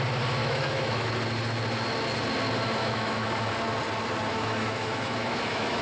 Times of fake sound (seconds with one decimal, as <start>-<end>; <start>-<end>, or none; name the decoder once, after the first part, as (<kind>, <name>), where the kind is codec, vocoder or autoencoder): 0.4-1.1 (autoencoder, DAC-VAE); 2.8-3.5; 4.3-5.8